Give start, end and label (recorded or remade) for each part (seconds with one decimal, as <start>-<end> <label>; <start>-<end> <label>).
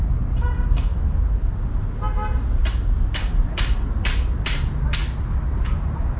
0.0-6.2 recorded